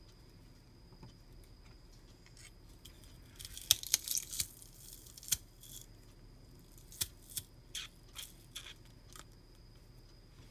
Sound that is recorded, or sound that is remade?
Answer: recorded